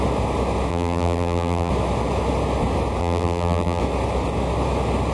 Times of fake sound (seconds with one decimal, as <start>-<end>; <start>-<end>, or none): 0.7-1.7; 3.0-3.8